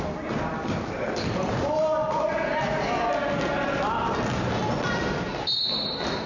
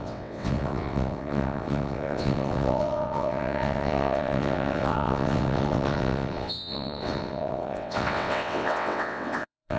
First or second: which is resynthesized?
second